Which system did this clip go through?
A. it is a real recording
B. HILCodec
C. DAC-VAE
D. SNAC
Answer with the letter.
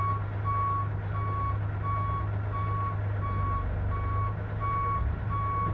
A